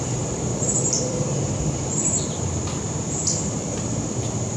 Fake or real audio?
fake